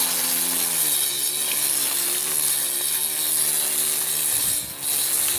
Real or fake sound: real